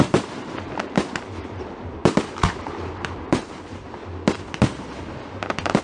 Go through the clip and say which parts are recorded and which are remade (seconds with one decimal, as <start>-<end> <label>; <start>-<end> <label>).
0.0-2.0 remade; 2.0-2.5 recorded; 2.5-4.0 remade; 4.0-5.8 recorded